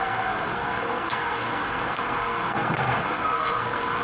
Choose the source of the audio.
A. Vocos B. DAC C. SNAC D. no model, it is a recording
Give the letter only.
C